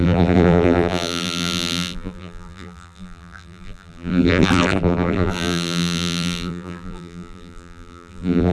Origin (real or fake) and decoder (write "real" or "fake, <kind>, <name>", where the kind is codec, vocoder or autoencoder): fake, vocoder, BigVGAN v2